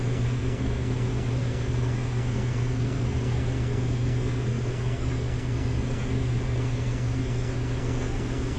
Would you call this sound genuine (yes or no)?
no